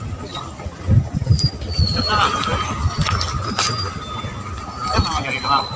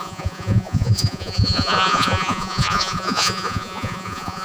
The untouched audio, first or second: first